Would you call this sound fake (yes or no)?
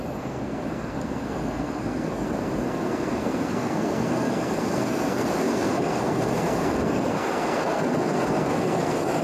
yes